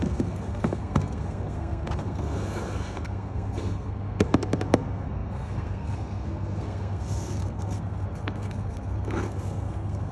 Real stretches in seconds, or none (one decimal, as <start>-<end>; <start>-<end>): none